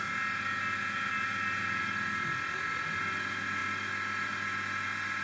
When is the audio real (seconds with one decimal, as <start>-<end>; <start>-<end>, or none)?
0.0-5.2